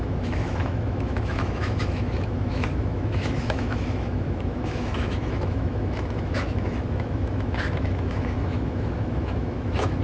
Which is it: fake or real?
fake